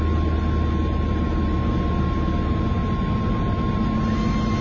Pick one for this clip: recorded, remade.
recorded